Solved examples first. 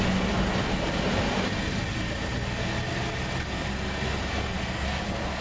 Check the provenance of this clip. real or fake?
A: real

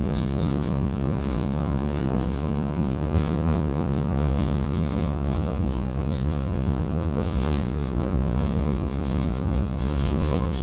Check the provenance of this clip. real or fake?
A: fake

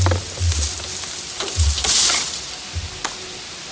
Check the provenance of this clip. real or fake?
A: real